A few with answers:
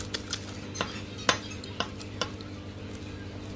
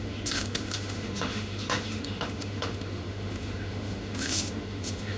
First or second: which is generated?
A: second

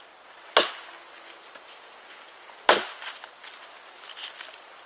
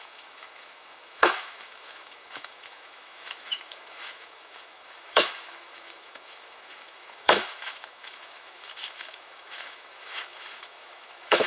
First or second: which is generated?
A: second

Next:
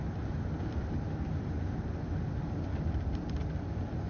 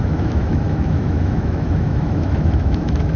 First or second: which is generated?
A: second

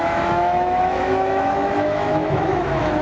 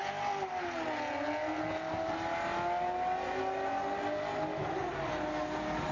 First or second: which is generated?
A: first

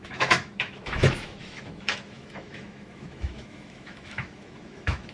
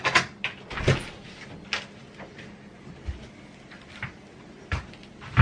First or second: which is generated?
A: first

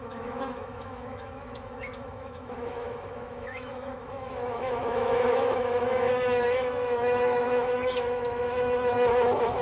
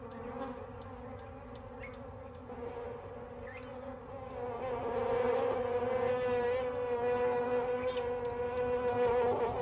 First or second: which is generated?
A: first